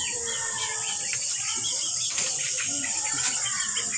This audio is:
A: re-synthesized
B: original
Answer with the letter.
B